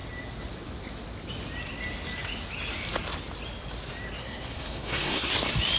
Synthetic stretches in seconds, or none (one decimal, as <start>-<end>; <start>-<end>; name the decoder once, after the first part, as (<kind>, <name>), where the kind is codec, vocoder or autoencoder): 4.2-5.3 (codec, SNAC)